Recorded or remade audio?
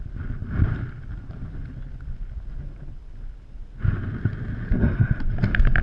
recorded